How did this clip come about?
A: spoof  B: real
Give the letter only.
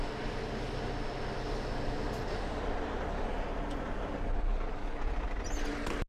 B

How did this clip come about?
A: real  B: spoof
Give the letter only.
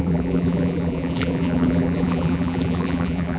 B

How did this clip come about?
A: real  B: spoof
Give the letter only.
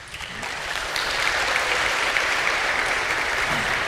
B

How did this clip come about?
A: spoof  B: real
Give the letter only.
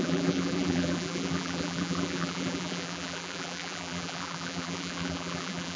A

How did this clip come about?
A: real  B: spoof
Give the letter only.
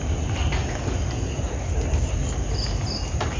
A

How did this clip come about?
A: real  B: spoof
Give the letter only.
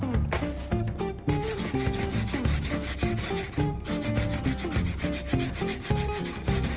A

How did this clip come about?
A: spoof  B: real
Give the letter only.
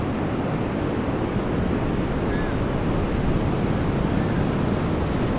B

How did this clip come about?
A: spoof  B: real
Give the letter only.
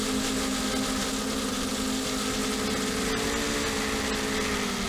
B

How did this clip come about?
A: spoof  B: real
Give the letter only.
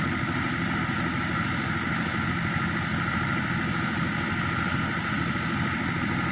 B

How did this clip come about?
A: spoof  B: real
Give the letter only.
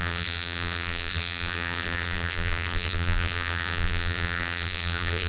A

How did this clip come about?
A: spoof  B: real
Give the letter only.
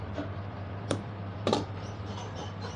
A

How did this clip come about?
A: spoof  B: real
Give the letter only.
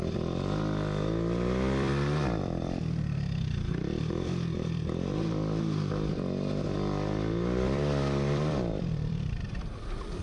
A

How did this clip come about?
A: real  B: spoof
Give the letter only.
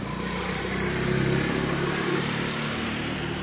B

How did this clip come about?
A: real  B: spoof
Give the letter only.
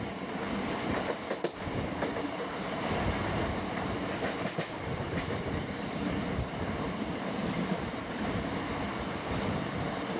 B